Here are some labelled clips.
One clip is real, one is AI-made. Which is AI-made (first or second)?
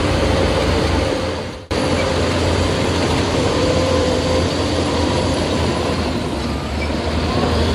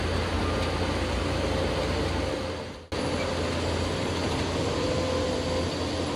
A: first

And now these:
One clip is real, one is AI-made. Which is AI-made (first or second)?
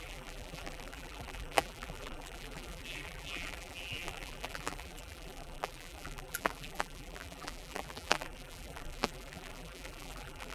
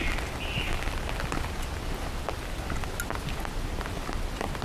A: first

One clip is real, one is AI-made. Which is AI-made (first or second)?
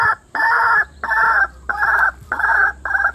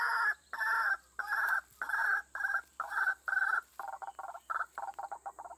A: first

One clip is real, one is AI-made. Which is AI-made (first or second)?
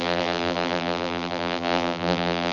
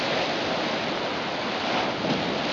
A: first